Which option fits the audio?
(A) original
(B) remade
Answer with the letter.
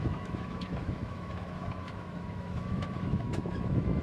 B